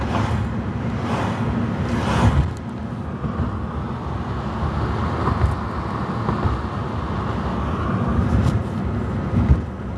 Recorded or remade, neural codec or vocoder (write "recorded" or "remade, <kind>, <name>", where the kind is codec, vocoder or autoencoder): recorded